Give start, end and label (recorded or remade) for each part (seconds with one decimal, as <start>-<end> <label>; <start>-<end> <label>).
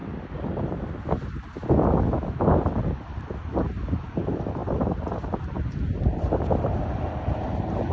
0.0-4.1 recorded; 4.1-7.9 remade